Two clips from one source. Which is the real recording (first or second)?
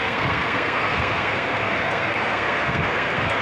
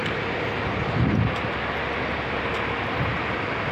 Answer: second